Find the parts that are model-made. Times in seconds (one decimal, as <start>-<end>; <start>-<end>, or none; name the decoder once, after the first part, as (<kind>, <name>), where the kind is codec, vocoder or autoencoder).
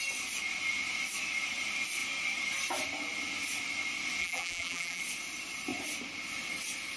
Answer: 4.2-5.0 (vocoder, BigVGAN v2)